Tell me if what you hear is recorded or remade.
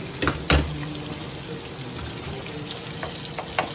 recorded